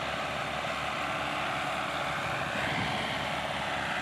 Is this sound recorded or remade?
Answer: recorded